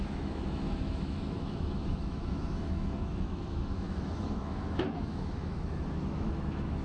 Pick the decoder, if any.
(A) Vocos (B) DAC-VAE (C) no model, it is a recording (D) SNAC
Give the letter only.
B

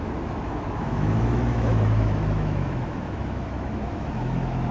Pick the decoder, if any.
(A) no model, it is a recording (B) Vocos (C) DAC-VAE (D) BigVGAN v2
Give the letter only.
C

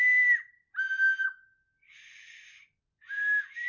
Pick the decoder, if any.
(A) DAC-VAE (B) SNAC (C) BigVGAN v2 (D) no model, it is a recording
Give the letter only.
D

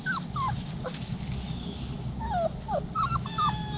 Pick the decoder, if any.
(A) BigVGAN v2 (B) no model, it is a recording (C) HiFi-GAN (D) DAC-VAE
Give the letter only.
B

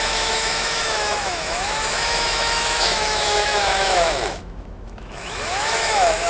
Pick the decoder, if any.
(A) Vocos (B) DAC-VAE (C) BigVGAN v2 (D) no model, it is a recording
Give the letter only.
B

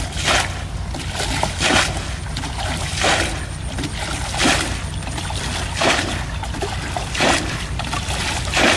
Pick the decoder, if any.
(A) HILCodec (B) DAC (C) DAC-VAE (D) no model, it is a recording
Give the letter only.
D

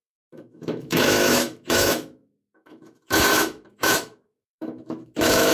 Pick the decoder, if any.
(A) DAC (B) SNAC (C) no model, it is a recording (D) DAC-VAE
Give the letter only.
D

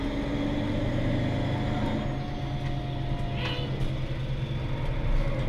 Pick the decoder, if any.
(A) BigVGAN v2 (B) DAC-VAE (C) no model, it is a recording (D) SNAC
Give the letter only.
C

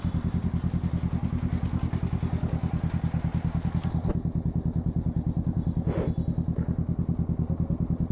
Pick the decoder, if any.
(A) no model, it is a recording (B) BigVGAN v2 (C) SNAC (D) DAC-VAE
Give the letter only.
A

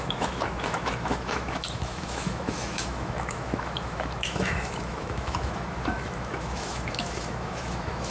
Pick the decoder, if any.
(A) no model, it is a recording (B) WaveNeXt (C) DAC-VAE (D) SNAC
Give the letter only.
C